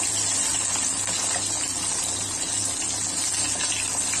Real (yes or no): yes